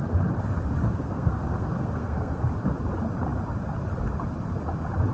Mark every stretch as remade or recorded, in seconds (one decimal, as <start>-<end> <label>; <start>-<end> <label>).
0.0-0.8 recorded; 0.8-2.4 remade; 2.4-5.1 recorded